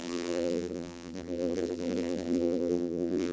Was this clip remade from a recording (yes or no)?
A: yes